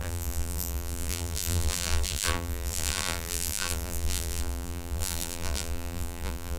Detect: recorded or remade remade